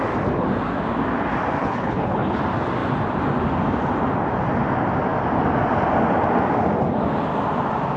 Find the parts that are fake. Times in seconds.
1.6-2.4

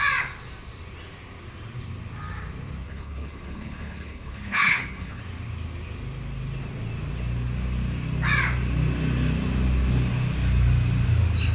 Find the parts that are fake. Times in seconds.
2.8-5.2